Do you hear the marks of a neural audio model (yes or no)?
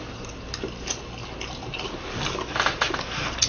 no